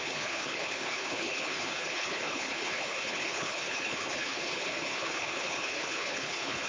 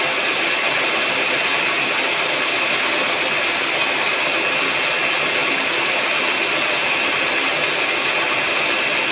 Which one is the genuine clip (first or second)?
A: second